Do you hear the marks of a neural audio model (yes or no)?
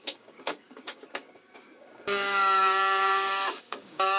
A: yes